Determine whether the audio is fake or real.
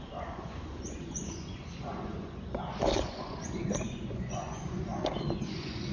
fake